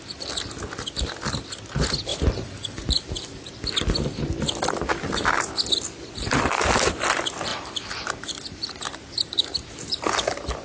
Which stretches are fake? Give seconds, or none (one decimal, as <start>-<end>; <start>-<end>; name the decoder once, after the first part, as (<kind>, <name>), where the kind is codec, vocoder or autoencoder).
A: 2.1-3.1 (vocoder, BigVGAN v2); 7.5-9.7